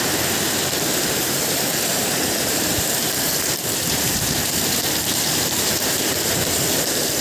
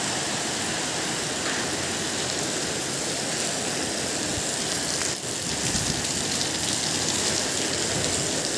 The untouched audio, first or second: second